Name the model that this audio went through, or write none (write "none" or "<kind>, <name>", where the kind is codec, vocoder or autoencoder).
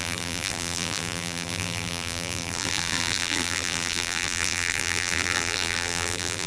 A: vocoder, BigVGAN v2